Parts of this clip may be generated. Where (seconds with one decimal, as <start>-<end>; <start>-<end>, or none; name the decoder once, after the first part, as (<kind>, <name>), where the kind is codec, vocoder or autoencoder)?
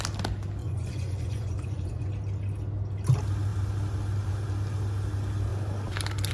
0.6-2.1 (vocoder, Vocos)